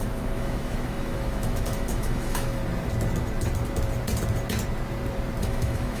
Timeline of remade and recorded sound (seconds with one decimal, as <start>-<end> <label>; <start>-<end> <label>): 0.0-2.6 remade; 2.6-5.4 recorded; 5.4-6.0 remade